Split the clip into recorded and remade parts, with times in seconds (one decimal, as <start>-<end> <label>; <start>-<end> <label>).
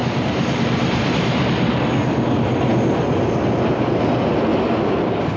0.0-1.8 remade; 1.8-5.4 recorded